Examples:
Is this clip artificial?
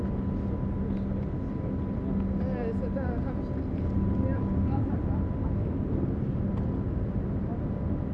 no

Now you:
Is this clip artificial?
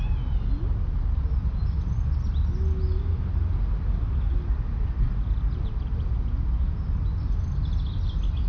no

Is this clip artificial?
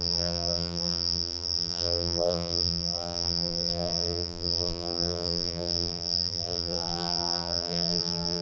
yes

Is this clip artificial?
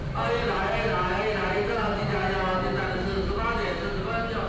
no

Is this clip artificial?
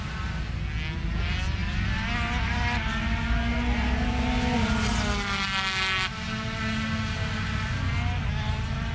no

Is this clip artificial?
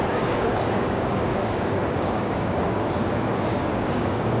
yes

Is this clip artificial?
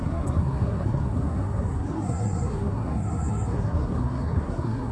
yes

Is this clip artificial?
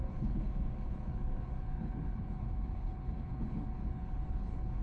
yes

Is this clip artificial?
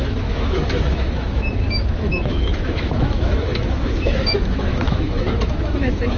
yes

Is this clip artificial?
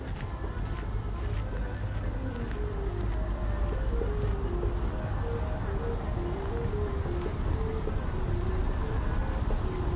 no